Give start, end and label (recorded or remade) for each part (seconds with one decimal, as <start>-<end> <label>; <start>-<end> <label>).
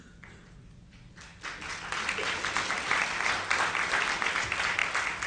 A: 0.0-5.3 remade